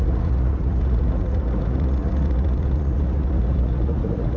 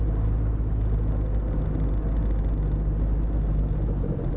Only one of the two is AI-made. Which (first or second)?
first